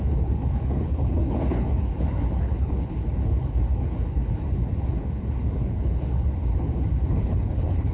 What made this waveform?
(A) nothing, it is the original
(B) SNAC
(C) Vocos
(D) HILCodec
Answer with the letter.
D